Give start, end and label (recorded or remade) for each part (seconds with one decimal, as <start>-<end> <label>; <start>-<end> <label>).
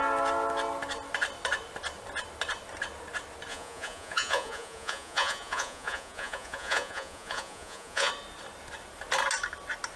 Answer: 0.0-3.5 recorded; 3.5-8.1 remade; 8.1-10.0 recorded